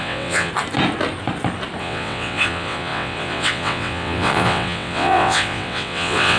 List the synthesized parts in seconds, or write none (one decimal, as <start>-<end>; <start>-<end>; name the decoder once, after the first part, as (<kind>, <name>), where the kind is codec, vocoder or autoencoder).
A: 0.0-0.5 (vocoder, WaveNeXt); 1.8-6.4